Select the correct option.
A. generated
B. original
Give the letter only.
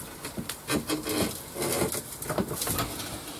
B